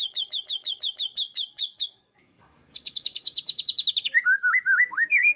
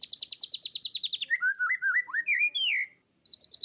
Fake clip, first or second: first